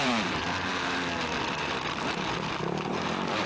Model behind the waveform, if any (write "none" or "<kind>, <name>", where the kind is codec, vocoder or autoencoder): none